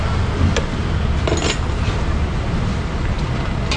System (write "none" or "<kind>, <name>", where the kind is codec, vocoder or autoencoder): none